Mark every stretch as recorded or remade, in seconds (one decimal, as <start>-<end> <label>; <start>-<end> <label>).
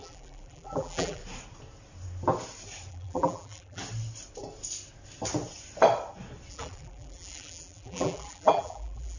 0.0-1.2 remade; 1.2-2.9 recorded; 2.9-3.8 remade; 3.8-6.5 recorded; 6.5-9.2 remade